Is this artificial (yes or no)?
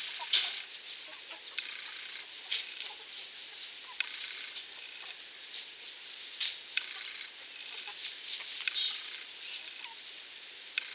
no